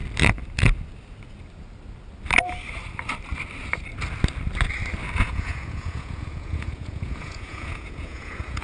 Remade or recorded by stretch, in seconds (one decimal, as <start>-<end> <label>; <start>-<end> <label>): 0.0-5.2 recorded; 5.2-8.6 remade